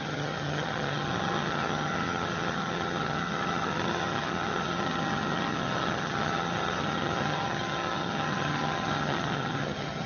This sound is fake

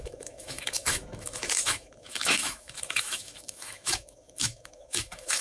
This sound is fake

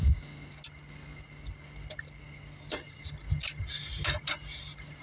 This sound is real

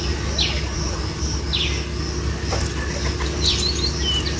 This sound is real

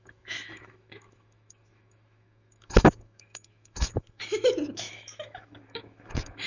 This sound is fake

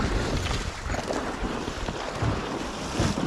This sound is real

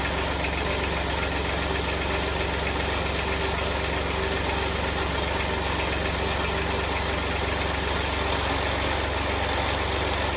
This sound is real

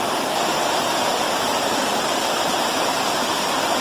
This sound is real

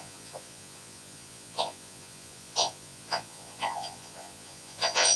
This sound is fake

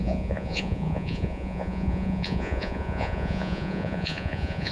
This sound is fake